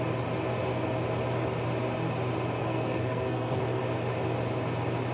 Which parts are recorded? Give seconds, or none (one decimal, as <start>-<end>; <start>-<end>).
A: 0.0-2.6; 3.8-5.1